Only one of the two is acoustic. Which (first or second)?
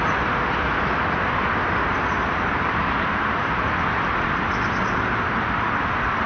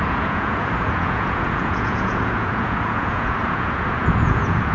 first